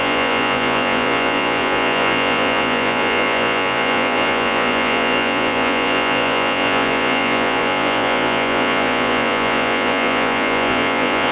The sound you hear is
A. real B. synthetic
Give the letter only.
B